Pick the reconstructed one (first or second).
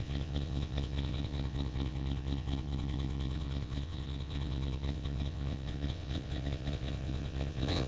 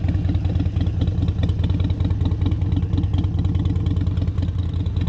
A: first